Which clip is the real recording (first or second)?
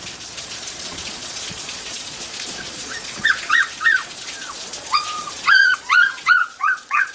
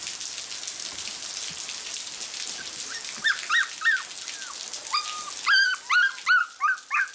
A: second